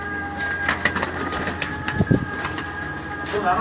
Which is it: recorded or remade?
recorded